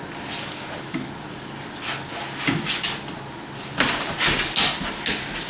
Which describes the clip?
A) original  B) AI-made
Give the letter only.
A